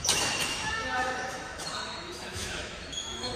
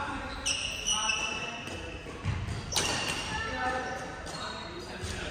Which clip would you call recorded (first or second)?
second